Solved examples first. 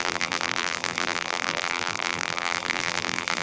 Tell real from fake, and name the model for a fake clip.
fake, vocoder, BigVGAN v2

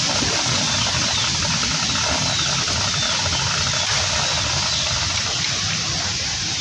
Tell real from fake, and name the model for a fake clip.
real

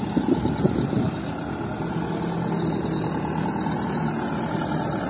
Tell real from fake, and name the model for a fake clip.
real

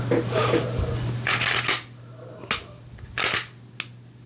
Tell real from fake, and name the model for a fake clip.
real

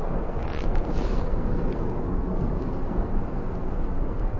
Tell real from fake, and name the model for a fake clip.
fake, codec, SNAC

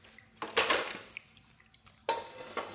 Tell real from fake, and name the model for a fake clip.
real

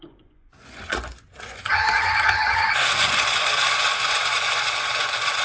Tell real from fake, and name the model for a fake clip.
fake, vocoder, Vocos